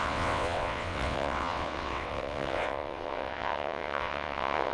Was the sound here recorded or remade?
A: remade